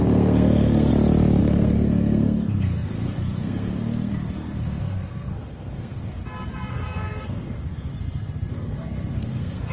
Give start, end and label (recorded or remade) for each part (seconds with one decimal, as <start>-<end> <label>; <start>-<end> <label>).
0.0-0.9 remade; 0.9-1.4 recorded; 1.4-6.2 remade; 6.2-6.7 recorded; 6.7-7.9 remade; 7.9-8.5 recorded; 8.5-9.7 remade